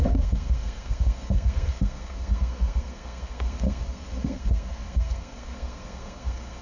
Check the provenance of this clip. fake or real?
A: fake